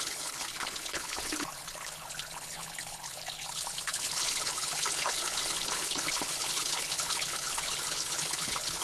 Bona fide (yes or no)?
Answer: no